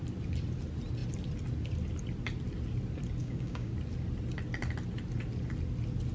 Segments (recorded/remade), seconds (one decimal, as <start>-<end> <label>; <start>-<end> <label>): 0.0-3.2 recorded; 3.2-3.7 remade; 3.7-6.1 recorded